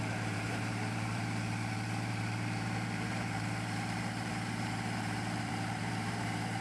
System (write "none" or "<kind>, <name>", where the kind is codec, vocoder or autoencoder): vocoder, BigVGAN v2